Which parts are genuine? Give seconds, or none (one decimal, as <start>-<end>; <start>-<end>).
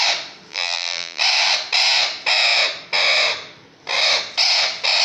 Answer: 0.0-0.5; 1.2-5.0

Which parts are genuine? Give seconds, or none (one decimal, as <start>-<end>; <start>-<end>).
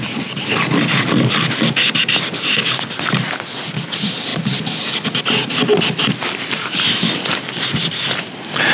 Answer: 0.0-8.7